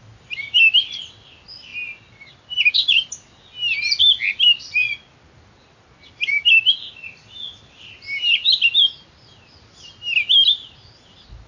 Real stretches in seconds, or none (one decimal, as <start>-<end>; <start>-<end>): 0.0-11.5